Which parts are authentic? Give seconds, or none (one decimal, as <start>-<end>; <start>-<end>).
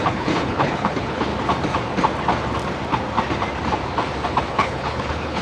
1.3-4.5